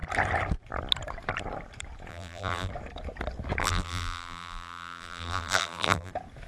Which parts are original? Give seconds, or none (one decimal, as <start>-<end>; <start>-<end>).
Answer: 0.0-2.1; 2.7-3.6; 6.1-6.5